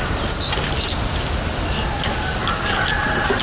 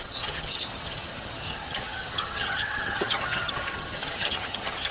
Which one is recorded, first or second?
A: first